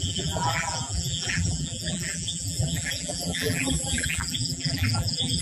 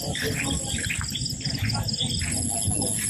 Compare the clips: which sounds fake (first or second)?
first